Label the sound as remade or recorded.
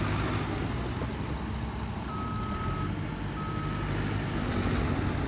recorded